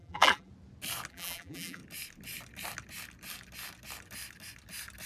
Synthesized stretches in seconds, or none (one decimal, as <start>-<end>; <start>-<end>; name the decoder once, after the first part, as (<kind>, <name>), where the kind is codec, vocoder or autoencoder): 0.0-0.5 (vocoder, BigVGAN v2); 1.1-1.8